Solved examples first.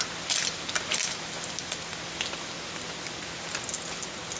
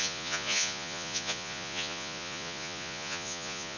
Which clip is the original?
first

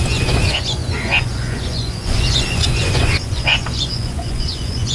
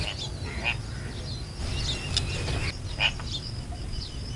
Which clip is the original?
second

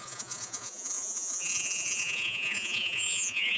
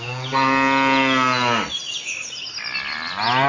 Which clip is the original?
second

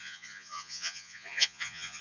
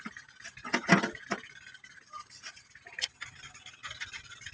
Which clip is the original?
second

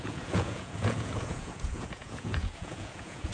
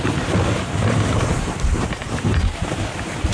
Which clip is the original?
second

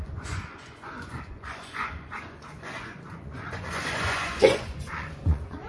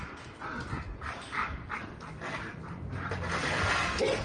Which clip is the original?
second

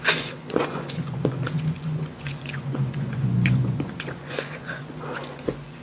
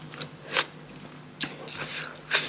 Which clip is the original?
second